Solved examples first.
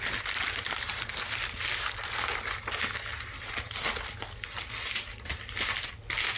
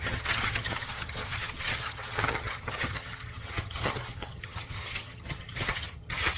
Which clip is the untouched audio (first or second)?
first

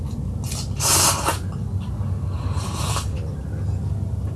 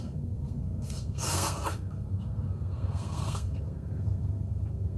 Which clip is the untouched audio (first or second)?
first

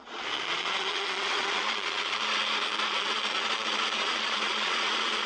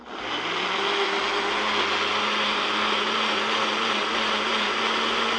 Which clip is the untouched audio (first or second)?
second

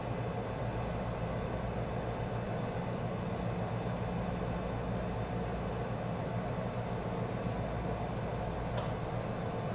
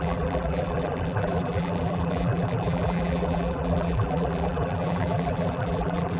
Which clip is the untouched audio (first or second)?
first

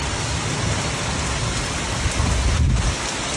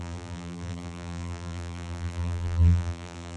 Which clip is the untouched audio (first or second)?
first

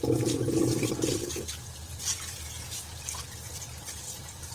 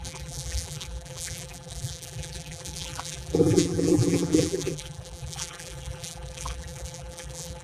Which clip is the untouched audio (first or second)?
first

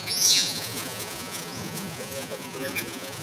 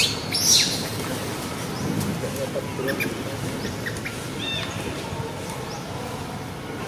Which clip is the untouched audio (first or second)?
second